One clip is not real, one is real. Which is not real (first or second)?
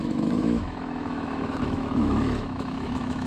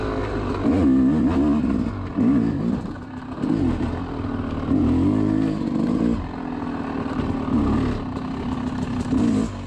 first